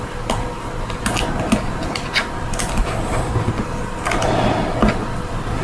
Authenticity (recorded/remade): recorded